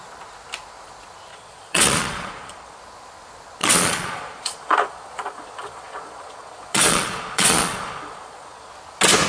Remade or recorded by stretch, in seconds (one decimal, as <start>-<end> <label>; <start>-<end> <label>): 0.0-1.3 recorded; 1.3-2.8 remade; 2.8-3.6 recorded; 3.6-8.7 remade; 8.7-9.3 recorded